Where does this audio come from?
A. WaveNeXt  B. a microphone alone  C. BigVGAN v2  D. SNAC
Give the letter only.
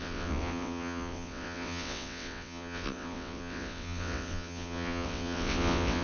A